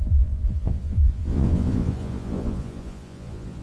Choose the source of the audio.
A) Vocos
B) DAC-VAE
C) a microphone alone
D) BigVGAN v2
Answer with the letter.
A